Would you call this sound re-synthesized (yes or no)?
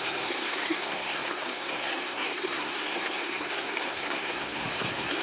yes